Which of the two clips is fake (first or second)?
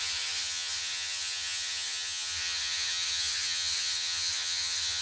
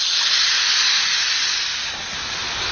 first